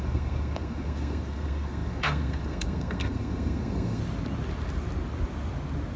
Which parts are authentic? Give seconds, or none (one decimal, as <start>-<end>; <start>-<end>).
4.0-6.0